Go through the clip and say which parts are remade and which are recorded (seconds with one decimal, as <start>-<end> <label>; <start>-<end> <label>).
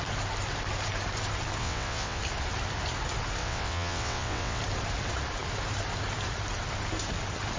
0.0-1.6 recorded; 1.6-2.2 remade; 2.2-3.4 recorded; 3.4-4.6 remade; 4.6-7.6 recorded